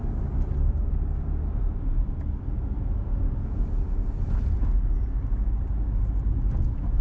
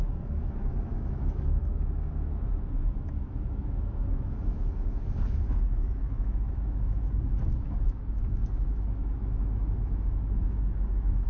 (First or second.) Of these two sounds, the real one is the first